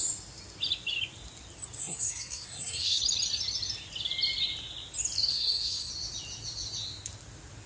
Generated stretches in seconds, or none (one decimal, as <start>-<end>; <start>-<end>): 1.8-3.0; 5.3-5.9